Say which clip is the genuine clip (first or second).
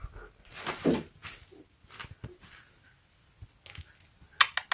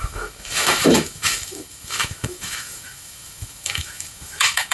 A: first